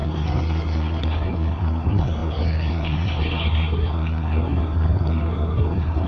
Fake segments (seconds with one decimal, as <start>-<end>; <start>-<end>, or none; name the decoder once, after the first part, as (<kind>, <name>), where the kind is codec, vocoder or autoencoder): 0.0-6.1 (codec, SNAC)